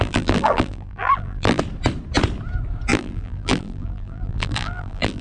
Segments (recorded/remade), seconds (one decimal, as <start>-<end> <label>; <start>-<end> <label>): 0.0-1.6 remade; 1.6-2.9 recorded; 2.9-5.2 remade